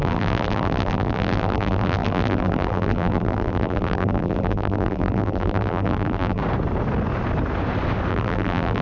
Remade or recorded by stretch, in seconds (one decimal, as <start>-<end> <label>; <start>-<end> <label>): 0.0-6.4 remade; 6.4-8.1 recorded; 8.1-8.8 remade